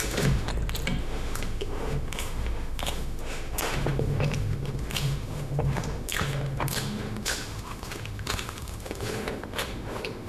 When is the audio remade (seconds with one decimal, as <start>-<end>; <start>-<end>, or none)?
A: 0.0-0.5; 1.0-10.3